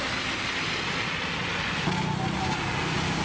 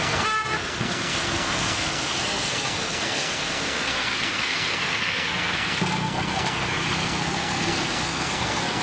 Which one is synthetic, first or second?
second